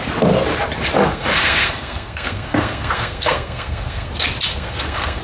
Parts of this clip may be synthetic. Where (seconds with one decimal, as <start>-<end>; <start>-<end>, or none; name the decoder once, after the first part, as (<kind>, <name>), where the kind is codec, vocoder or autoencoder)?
1.1-4.1 (codec, SNAC); 4.5-5.2

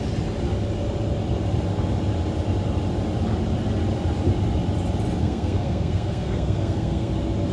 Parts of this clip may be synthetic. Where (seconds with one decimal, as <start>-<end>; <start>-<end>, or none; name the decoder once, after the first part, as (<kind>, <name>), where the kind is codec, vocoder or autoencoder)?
5.2-7.1 (codec, SNAC)

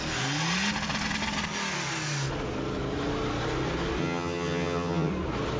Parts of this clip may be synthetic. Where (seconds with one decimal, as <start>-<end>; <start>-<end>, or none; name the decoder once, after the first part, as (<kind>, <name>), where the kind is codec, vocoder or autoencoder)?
4.0-5.1 (vocoder, HiFi-GAN)